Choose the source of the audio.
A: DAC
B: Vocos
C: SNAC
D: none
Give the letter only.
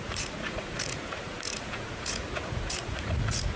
B